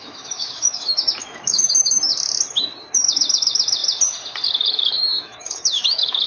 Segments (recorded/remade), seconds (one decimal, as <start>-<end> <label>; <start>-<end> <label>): 0.0-2.1 remade; 2.1-2.9 recorded; 2.9-3.8 remade; 3.8-4.5 recorded; 4.5-6.3 remade